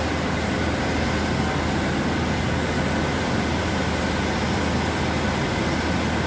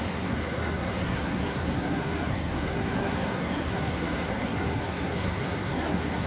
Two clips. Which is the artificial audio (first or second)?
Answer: second